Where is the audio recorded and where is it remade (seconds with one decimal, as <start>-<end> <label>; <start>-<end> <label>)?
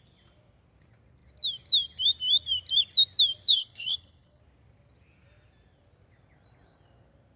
0.0-3.5 recorded; 3.5-4.4 remade; 4.4-7.4 recorded